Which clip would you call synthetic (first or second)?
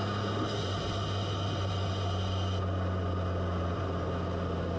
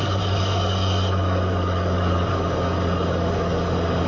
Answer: second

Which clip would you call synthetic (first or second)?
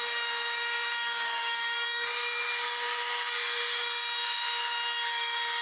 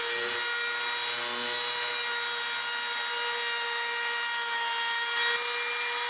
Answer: first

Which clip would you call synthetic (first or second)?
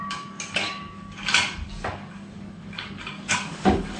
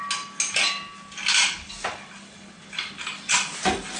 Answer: first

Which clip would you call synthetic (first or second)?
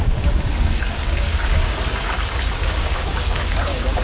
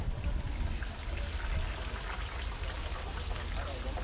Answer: first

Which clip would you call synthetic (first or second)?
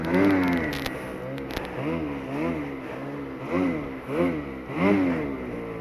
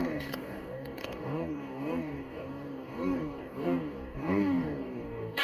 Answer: second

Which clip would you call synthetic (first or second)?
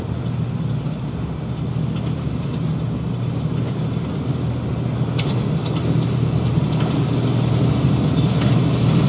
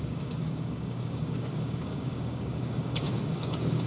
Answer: second